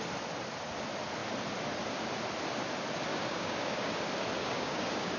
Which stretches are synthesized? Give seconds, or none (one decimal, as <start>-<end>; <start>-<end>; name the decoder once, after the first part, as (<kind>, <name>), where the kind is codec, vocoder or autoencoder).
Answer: 3.1-4.0 (codec, DAC); 4.4-5.2

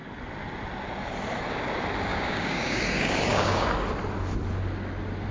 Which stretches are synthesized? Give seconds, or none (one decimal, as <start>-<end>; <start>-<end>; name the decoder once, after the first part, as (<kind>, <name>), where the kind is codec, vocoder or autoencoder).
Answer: 2.1-3.7 (codec, DAC)

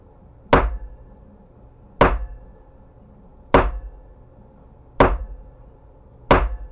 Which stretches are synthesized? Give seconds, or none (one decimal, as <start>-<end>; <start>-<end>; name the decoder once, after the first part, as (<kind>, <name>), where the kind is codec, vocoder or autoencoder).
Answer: none

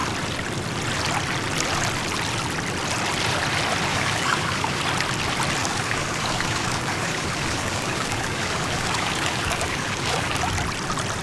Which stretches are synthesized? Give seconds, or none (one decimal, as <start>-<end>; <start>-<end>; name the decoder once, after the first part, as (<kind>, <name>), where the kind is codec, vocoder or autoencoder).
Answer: 3.9-4.8 (codec, DAC); 5.6-10.4